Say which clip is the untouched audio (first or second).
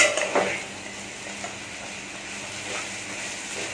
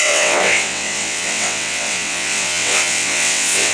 first